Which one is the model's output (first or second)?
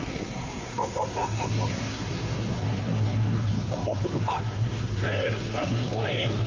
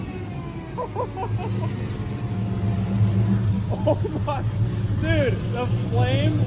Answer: first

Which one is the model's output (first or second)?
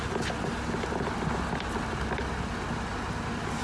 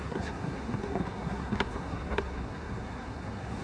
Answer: second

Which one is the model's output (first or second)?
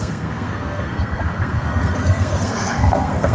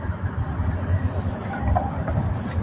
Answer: first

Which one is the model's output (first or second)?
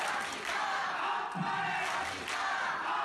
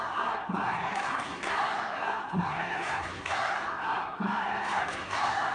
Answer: second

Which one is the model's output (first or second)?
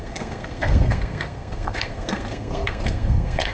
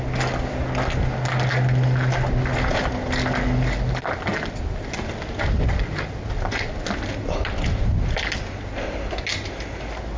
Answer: first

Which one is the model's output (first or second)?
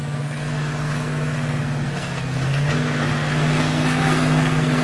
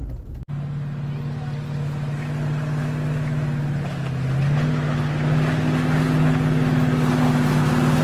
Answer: first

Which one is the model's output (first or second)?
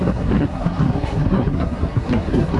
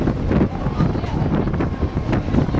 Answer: first